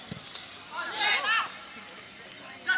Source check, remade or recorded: recorded